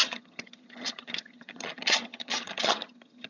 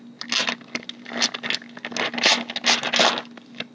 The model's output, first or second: first